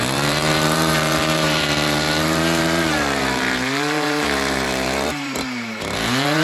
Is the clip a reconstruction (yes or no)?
yes